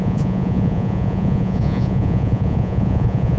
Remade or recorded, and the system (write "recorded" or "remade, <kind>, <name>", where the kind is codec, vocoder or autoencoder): remade, vocoder, Vocos